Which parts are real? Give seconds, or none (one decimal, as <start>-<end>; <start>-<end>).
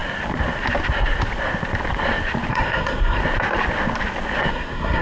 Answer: 0.0-2.5; 3.2-4.5